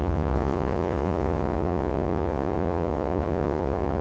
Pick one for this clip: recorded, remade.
remade